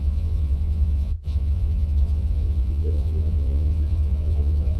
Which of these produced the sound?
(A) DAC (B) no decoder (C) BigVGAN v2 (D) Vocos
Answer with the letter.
D